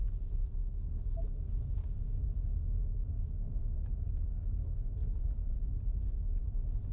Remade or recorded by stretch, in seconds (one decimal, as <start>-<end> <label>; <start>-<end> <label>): 0.0-1.8 recorded; 1.8-5.5 remade; 5.5-6.9 recorded

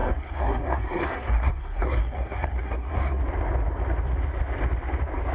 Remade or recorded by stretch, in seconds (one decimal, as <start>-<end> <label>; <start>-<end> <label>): 0.0-3.2 remade; 3.2-5.3 recorded

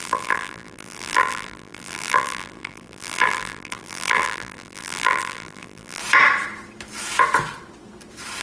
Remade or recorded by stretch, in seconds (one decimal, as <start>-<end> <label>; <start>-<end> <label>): 0.0-6.0 remade; 6.0-8.4 recorded

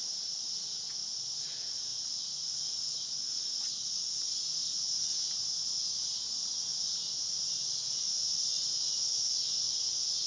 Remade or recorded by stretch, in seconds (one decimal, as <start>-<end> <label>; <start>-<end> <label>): 0.0-10.3 recorded

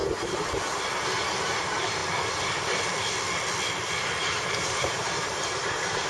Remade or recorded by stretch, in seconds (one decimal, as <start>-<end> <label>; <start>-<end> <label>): 0.0-1.6 recorded; 1.6-2.0 remade; 2.0-4.2 recorded; 4.2-6.1 remade

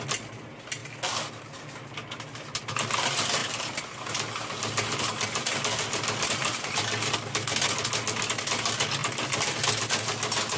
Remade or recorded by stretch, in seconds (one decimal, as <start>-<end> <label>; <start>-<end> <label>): 0.0-10.6 recorded